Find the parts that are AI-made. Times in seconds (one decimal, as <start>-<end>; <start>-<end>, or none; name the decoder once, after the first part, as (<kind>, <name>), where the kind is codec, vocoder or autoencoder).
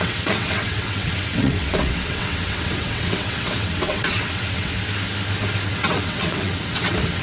0.0-4.7 (vocoder, WaveNeXt); 5.7-7.2